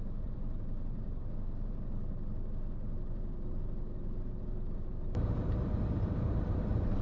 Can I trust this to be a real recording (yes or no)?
no